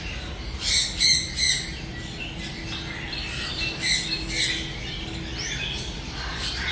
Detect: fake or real real